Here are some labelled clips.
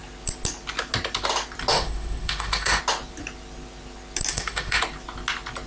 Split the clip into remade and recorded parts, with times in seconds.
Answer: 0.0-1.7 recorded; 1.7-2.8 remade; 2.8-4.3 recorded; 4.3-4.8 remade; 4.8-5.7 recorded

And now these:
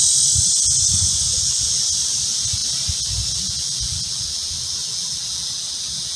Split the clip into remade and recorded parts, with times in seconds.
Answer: 0.0-6.2 recorded

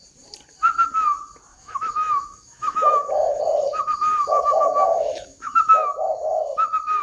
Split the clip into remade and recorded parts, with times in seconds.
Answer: 0.0-1.5 recorded; 1.5-3.4 remade; 3.4-4.2 recorded; 4.2-5.6 remade; 5.6-7.0 recorded

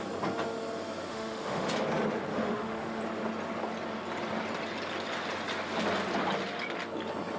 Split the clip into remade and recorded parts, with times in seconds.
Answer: 0.0-1.1 recorded; 1.1-1.7 remade; 1.7-2.3 recorded; 2.3-3.0 remade; 3.0-7.4 recorded

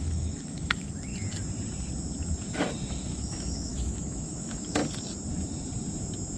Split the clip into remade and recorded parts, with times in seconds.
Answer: 0.0-1.1 remade; 1.1-2.9 recorded; 2.9-4.8 remade; 4.8-6.4 recorded